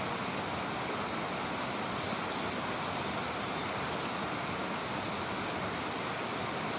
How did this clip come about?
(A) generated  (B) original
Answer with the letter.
B